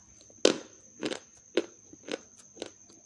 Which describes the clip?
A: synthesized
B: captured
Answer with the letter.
B